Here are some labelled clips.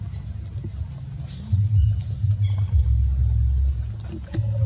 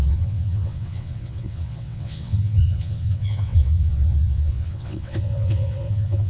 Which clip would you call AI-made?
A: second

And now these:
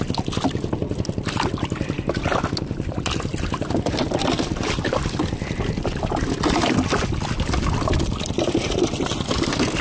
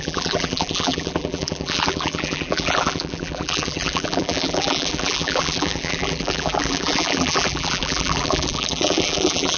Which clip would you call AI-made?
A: second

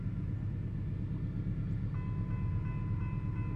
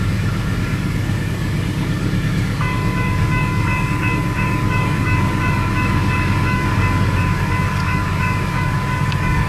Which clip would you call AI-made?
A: second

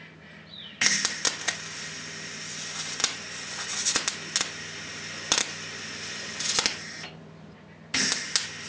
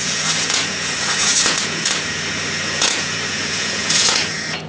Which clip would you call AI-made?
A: second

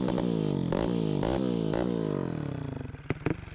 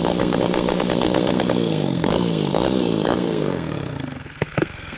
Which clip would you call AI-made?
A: second